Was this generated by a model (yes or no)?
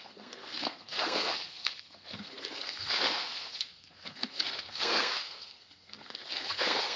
yes